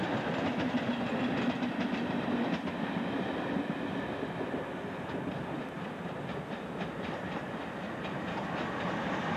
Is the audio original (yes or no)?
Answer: yes